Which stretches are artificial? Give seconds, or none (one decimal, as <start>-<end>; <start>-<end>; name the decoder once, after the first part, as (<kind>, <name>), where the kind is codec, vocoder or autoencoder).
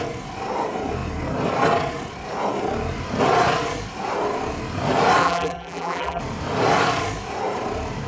5.2-6.2 (vocoder, BigVGAN v2)